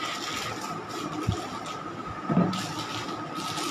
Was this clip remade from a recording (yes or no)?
no